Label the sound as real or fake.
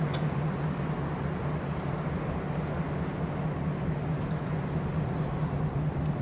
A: real